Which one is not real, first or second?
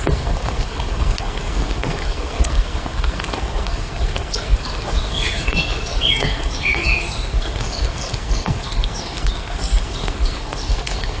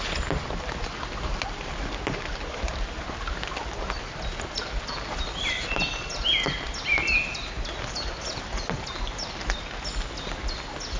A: first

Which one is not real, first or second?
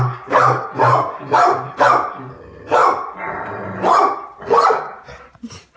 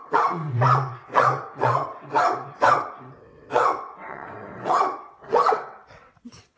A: second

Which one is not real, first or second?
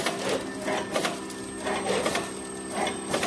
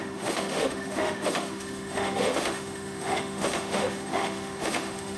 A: second